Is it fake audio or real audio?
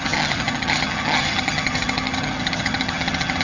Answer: fake